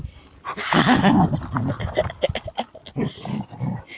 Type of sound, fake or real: real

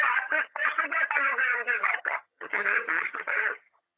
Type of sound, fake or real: fake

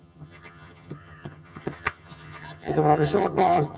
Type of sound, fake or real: fake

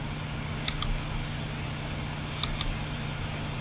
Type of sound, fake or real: real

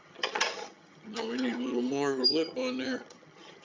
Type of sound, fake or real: fake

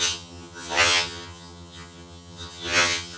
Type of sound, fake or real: fake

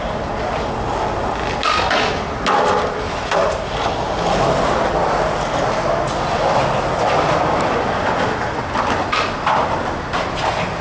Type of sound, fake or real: real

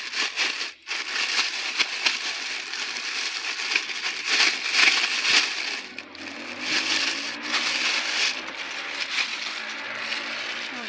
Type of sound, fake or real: real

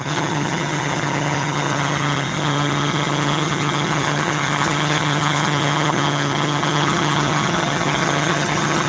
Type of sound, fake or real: fake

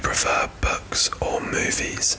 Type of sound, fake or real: real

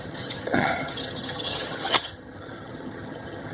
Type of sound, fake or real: fake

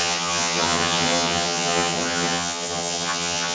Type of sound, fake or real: fake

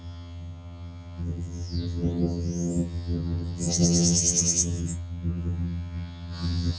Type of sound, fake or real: fake